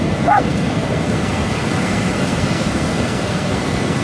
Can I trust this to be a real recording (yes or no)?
no